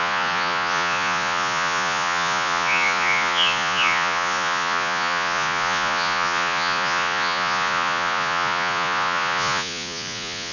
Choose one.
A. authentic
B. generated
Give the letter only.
B